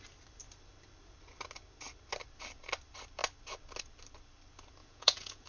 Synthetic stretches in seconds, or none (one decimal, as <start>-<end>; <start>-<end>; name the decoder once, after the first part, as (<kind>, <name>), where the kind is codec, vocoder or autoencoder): 4.8-5.5 (vocoder, Vocos)